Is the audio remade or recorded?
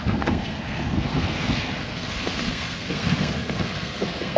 remade